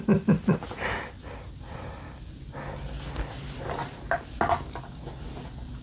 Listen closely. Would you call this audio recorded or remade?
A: recorded